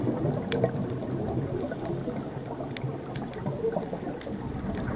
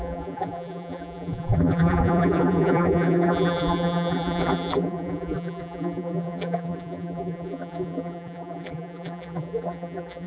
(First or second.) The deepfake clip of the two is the second